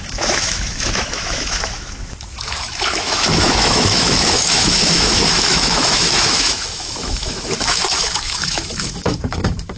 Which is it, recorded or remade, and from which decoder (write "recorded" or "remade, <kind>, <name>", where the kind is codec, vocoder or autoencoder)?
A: remade, autoencoder, DAC-VAE